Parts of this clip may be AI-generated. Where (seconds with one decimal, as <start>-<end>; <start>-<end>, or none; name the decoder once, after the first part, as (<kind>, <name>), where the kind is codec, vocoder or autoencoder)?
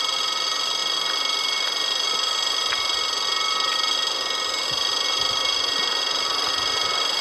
none